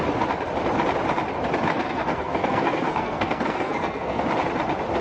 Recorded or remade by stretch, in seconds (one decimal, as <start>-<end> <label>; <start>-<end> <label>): 0.0-1.7 recorded; 1.7-4.2 remade; 4.2-5.0 recorded